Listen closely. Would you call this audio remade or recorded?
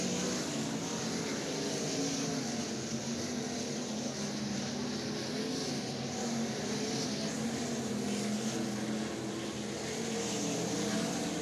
recorded